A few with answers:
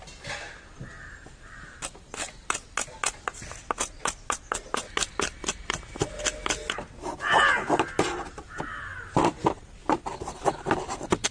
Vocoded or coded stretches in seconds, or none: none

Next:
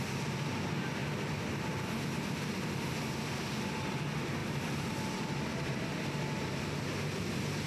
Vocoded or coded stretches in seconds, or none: none

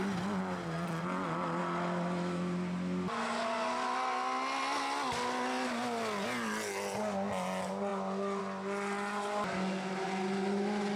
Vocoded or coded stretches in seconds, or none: none

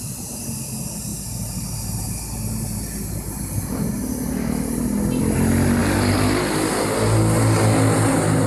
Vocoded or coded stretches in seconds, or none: none

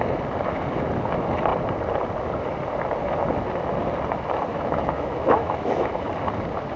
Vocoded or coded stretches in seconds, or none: 4.5-6.0 (autoencoder, DAC-VAE)